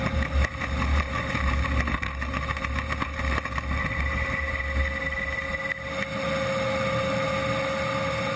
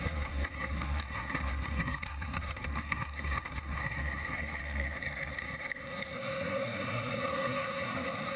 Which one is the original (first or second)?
first